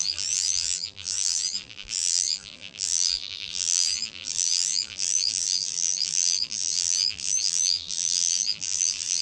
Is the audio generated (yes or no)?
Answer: yes